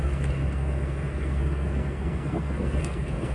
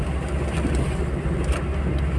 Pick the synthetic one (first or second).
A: first